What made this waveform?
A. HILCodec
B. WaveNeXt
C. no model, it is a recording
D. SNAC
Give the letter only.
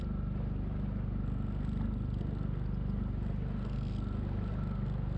C